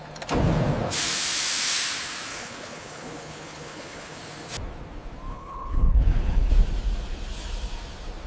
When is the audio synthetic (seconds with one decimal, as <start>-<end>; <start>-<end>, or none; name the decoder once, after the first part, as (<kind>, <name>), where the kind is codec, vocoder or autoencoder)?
2.3-4.2 (codec, HILCodec); 5.3-6.5